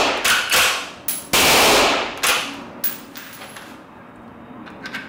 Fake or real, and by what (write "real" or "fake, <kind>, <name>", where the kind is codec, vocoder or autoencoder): real